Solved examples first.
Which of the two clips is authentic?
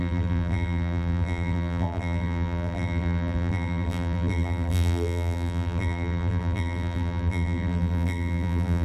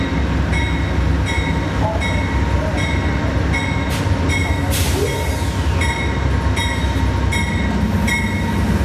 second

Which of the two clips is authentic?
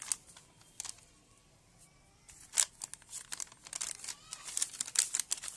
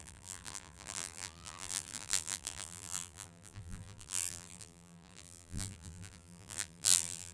first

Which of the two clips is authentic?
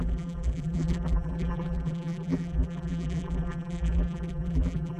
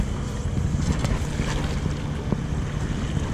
second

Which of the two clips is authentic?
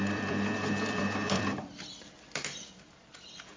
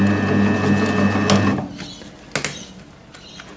second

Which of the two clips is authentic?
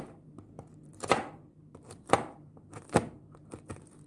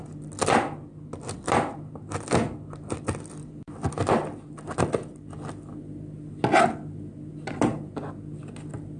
second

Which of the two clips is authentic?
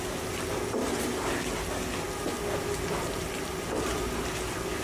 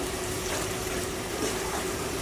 first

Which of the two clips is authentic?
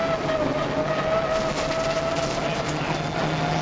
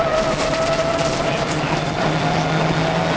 first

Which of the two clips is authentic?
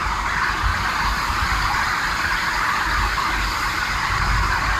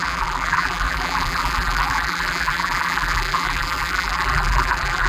first